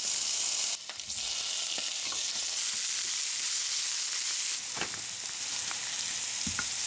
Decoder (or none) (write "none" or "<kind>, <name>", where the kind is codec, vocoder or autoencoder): none